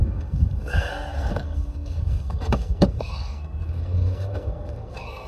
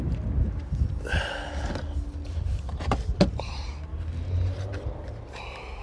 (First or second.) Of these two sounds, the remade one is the first